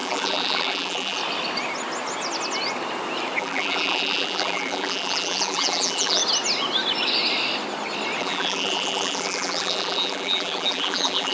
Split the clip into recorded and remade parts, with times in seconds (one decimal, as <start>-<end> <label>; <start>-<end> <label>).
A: 0.0-1.2 remade; 1.2-3.4 recorded; 3.4-6.2 remade; 6.2-8.2 recorded; 8.2-11.3 remade